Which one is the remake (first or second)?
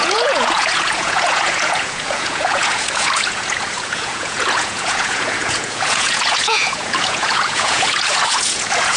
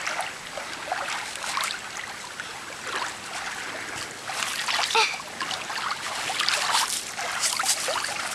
first